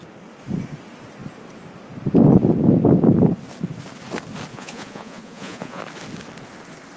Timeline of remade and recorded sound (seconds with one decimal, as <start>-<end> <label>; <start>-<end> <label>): 0.0-4.5 recorded; 4.5-5.8 remade; 5.8-7.0 recorded